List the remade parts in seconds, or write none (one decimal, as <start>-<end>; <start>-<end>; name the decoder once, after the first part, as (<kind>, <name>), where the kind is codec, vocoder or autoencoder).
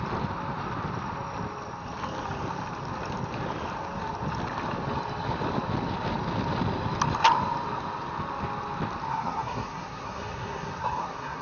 9.1-11.4 (codec, SNAC)